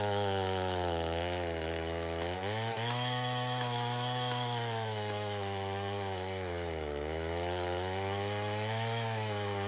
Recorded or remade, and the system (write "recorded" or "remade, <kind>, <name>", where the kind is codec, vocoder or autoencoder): remade, autoencoder, DAC-VAE